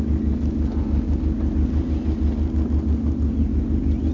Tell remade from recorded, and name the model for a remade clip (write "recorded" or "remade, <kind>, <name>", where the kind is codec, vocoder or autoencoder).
recorded